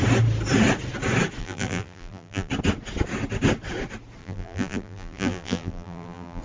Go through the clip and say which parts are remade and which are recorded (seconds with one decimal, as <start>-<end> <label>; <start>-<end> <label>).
0.0-1.4 recorded; 1.4-2.5 remade; 2.5-4.2 recorded; 4.2-6.4 remade